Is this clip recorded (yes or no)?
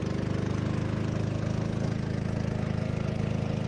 yes